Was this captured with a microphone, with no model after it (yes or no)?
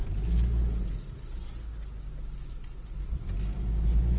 yes